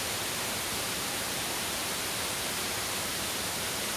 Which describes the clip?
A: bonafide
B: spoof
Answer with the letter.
B